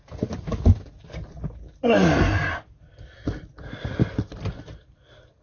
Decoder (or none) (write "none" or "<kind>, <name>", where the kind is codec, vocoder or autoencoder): none